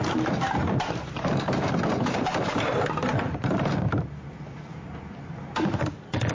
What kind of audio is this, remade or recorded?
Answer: remade